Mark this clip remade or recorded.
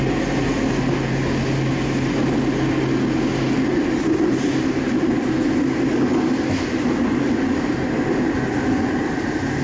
recorded